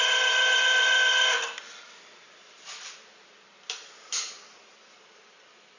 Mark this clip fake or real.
real